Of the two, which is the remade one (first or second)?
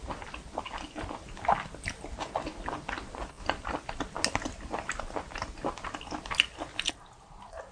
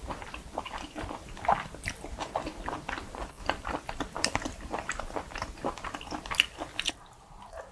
second